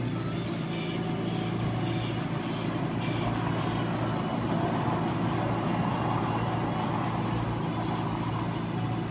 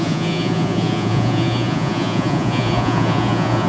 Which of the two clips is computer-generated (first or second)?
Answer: second